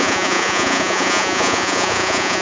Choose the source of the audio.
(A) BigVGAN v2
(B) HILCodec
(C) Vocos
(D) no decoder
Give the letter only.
C